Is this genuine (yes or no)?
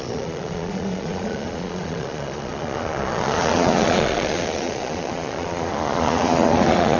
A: no